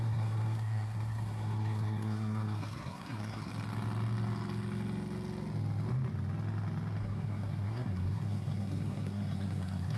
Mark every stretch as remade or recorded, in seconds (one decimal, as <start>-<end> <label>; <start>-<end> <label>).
0.0-3.5 remade; 3.5-7.0 recorded; 7.0-10.0 remade